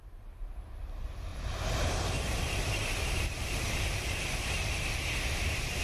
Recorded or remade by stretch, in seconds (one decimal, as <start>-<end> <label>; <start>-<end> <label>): 0.0-1.3 recorded; 1.3-4.8 remade; 4.8-5.8 recorded